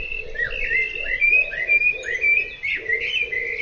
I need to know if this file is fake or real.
real